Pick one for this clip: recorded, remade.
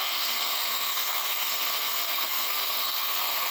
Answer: remade